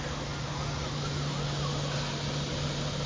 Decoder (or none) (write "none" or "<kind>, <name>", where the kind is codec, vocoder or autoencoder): none